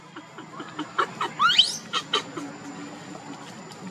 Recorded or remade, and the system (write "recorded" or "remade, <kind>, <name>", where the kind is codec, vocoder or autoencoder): recorded